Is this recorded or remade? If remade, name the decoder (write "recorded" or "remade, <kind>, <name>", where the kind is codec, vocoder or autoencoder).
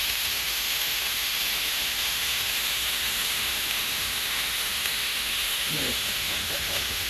remade, autoencoder, DAC-VAE